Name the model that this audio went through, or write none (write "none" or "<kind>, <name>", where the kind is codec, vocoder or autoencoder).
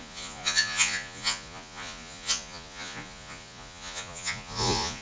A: vocoder, Vocos